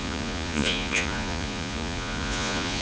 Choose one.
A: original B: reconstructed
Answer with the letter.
B